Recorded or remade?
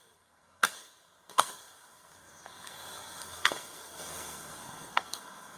remade